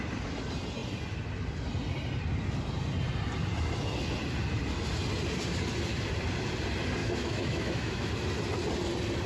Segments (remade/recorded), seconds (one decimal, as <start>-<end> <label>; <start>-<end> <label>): 0.0-7.0 recorded; 7.0-8.1 remade; 8.1-9.3 recorded